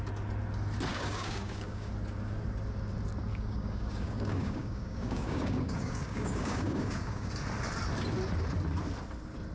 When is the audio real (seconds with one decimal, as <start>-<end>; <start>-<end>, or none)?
0.0-0.9; 1.9-3.3; 7.3-9.5